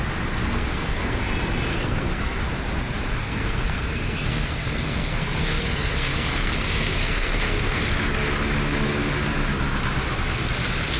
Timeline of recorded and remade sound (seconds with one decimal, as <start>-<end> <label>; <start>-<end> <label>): 0.0-0.4 recorded; 0.4-1.2 remade; 1.2-1.7 recorded; 1.7-2.4 remade; 2.4-3.2 recorded; 3.2-7.8 remade; 7.8-11.0 recorded